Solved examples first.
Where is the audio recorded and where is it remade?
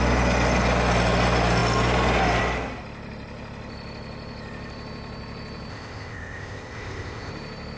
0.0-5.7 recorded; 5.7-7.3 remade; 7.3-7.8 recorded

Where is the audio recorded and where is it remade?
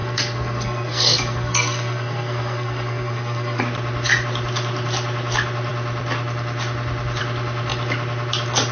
0.0-3.6 remade; 3.6-8.7 recorded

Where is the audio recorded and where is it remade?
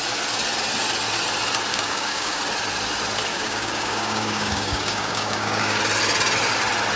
0.0-1.7 recorded; 1.7-2.4 remade; 2.4-3.3 recorded; 3.3-5.8 remade; 5.8-7.0 recorded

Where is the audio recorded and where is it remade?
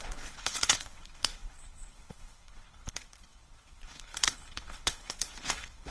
0.0-5.9 remade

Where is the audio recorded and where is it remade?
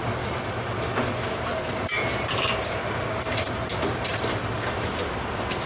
0.0-5.7 recorded